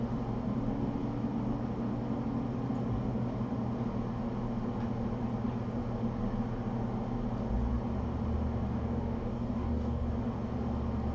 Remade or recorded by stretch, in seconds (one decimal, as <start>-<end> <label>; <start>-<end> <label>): 0.0-8.7 recorded; 8.7-10.1 remade; 10.1-11.1 recorded